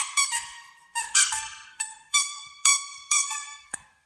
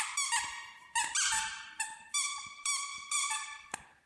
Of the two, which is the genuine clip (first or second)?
second